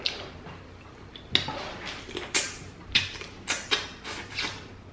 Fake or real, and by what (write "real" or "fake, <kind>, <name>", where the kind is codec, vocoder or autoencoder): real